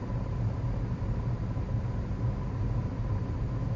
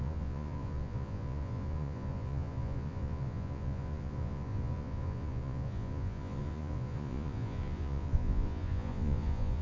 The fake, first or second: second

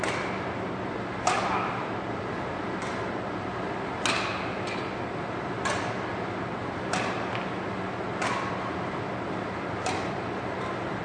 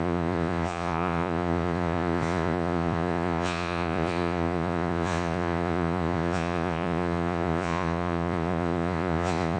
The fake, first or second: second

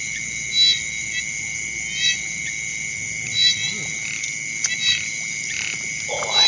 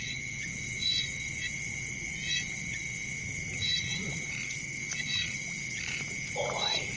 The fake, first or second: second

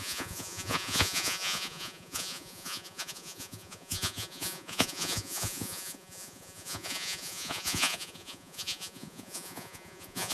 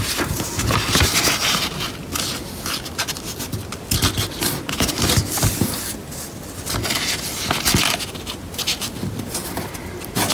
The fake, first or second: first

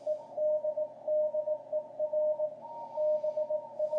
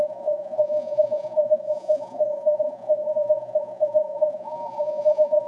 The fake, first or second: second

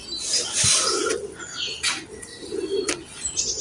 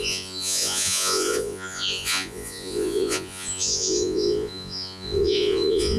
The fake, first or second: second